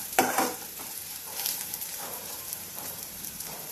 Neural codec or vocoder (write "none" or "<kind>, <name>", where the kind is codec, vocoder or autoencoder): vocoder, BigVGAN v2